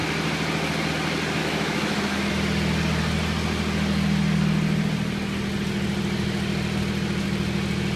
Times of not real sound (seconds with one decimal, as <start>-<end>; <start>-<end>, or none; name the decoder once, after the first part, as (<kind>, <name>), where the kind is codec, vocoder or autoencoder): 1.4-2.3 (autoencoder, DAC-VAE)